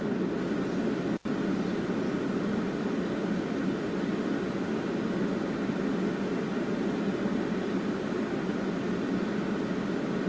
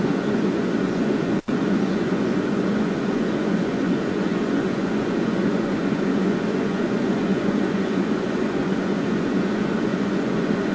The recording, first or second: first